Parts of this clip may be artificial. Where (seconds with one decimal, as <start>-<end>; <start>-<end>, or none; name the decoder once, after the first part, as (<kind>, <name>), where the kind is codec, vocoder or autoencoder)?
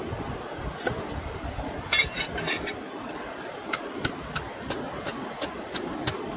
none